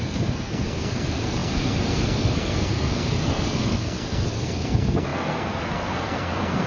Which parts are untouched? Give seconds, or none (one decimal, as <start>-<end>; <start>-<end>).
none